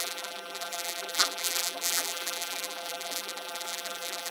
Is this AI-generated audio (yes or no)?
yes